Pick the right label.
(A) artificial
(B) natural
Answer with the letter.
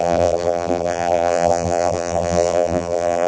A